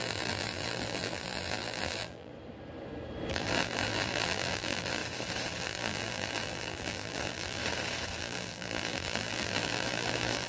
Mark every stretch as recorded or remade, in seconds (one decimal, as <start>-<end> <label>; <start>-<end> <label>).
0.0-2.3 remade; 2.3-3.3 recorded; 3.3-5.0 remade; 5.0-5.6 recorded; 5.6-7.6 remade; 7.6-8.2 recorded; 8.2-10.5 remade